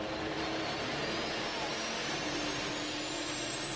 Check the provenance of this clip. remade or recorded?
recorded